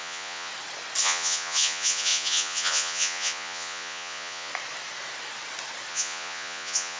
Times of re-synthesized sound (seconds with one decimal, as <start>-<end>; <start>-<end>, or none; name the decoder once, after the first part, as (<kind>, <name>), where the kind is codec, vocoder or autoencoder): 0.0-0.5 (vocoder, Vocos); 1.0-4.5; 5.9-7.0